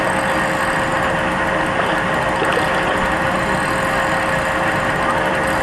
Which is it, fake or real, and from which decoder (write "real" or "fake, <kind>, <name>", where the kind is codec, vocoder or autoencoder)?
real